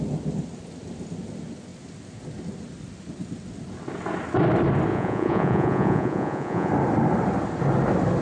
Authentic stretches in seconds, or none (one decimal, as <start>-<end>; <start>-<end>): 0.0-4.9; 6.7-8.2